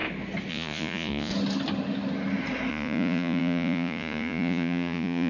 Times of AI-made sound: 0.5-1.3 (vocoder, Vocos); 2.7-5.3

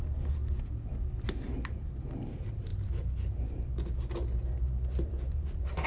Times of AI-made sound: none

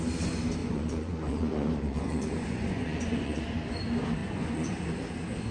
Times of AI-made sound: 0.6-3.4 (vocoder, Vocos); 4.2-4.7

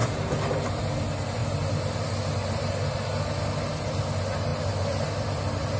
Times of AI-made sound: none

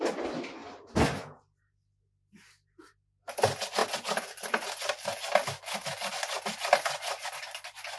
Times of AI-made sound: none

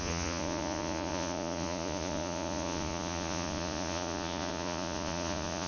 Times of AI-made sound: 0.0-5.7 (vocoder, Vocos)